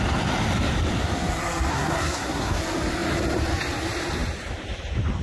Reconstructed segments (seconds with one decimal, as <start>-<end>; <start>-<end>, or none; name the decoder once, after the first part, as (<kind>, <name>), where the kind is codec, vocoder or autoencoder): 1.7-2.6 (codec, SNAC)